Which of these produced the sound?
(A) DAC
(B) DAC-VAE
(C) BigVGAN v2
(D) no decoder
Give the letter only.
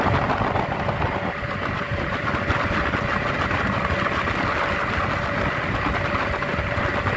D